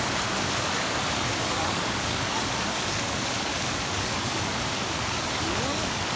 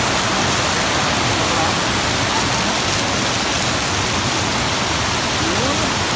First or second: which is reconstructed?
first